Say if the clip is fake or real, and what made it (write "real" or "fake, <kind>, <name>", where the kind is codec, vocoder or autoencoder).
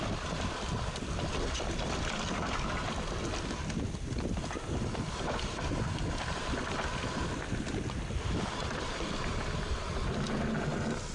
real